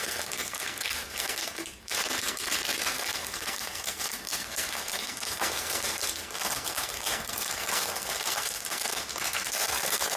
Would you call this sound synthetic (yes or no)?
yes